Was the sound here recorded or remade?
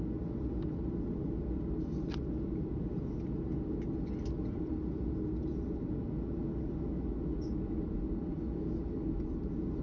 recorded